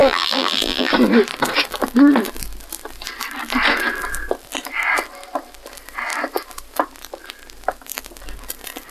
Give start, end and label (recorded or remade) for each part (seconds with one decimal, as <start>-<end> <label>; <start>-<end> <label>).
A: 0.0-0.9 remade; 0.9-8.9 recorded